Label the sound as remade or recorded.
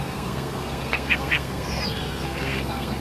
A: remade